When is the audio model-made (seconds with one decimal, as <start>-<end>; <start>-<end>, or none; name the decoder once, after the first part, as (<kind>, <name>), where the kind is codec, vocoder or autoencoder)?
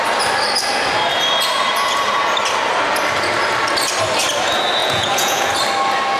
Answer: 4.8-5.5 (vocoder, Vocos)